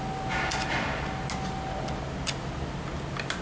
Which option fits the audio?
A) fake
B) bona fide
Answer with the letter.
B